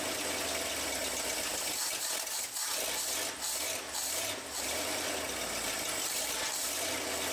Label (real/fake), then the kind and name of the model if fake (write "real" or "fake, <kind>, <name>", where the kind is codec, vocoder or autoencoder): real